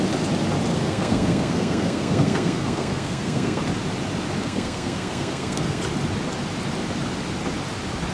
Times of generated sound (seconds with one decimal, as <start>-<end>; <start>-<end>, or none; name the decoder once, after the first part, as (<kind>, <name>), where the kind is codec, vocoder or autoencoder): 0.7-3.6 (codec, SNAC); 4.4-5.8

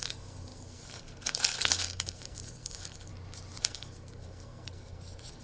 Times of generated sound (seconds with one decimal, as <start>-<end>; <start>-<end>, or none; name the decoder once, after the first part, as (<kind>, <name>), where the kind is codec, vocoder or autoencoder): 0.0-3.1 (codec, SNAC); 3.6-5.4

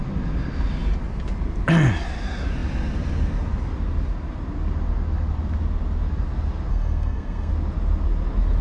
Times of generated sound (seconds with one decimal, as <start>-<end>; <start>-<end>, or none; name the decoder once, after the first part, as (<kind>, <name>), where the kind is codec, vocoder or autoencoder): 6.7-7.5 (codec, SNAC)

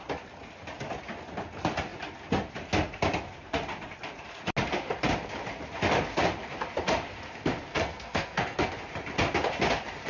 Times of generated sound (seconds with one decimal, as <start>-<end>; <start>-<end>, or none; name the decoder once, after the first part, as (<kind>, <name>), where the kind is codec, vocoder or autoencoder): 7.7-8.7 (codec, SNAC)

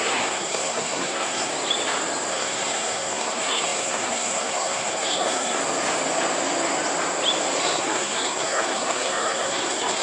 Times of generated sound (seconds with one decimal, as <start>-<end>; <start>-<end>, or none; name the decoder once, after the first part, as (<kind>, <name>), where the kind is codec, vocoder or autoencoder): 0.0-1.5 (codec, SNAC); 2.3-5.6; 7.6-10.0

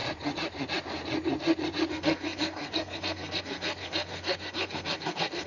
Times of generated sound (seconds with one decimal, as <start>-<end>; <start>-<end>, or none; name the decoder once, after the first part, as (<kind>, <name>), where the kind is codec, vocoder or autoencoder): 1.9-5.5 (codec, SNAC)

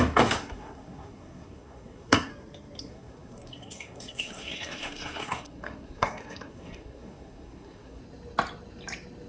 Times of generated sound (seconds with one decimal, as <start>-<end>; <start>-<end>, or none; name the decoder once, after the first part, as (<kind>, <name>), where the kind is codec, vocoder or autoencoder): 0.0-2.3 (codec, SNAC); 2.8-8.0

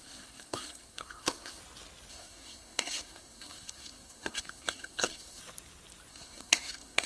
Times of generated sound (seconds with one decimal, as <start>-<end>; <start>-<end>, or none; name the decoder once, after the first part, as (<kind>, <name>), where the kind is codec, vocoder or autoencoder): 0.0-1.6 (codec, SNAC); 2.1-5.4; 6.1-7.1